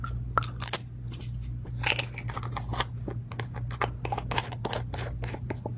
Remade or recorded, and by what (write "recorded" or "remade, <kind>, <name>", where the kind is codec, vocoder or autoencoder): recorded